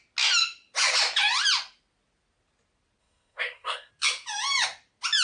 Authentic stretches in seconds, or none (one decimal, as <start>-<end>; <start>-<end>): 0.0-3.0; 3.9-5.2